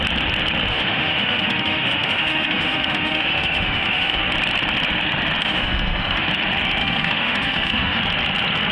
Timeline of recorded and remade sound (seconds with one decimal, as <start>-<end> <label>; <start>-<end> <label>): 0.0-0.7 recorded; 0.7-4.2 remade; 4.2-5.4 recorded; 5.4-6.3 remade; 6.3-6.8 recorded; 6.8-8.0 remade; 8.0-8.7 recorded